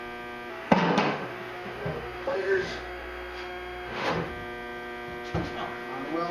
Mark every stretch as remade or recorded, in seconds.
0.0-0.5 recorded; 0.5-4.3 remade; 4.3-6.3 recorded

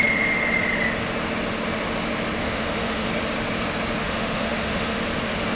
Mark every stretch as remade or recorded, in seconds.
0.0-2.4 recorded; 2.4-3.1 remade; 3.1-4.0 recorded; 4.0-5.0 remade; 5.0-5.6 recorded

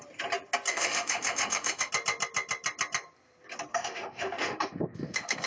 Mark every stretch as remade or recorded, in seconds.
0.0-0.7 recorded; 0.7-1.9 remade; 1.9-3.7 recorded; 3.7-5.5 remade

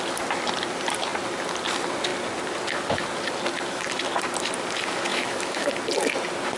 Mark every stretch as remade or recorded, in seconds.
0.0-5.1 recorded; 5.1-5.7 remade; 5.7-6.6 recorded

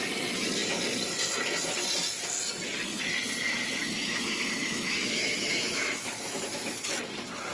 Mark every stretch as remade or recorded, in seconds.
0.0-3.8 recorded; 3.8-6.9 remade; 6.9-7.5 recorded

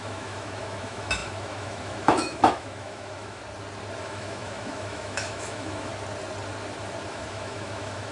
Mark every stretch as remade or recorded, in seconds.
0.0-3.4 remade; 3.4-4.0 recorded; 4.0-5.9 remade; 5.9-7.1 recorded; 7.1-8.1 remade

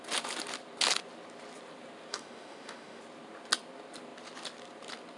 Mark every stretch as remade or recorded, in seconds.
0.0-2.1 recorded; 2.1-3.0 remade; 3.0-5.2 recorded

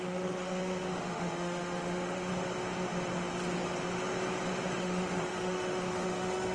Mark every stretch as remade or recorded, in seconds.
0.0-2.3 remade; 2.3-4.8 recorded; 4.8-6.5 remade